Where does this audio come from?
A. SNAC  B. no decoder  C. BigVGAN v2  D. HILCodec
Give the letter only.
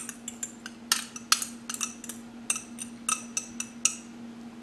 B